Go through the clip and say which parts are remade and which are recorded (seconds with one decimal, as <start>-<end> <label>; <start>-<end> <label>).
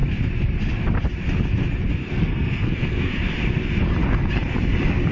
0.0-2.0 recorded; 2.0-3.2 remade; 3.2-5.1 recorded